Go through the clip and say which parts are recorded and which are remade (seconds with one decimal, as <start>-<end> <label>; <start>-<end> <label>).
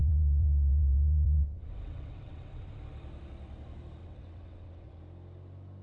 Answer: 0.0-2.7 remade; 2.7-4.0 recorded; 4.0-5.0 remade; 5.0-5.8 recorded